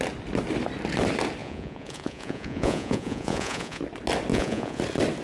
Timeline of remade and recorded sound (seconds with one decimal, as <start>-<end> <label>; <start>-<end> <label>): 0.0-1.4 recorded; 1.4-3.8 remade; 3.8-4.3 recorded; 4.3-4.8 remade; 4.8-5.2 recorded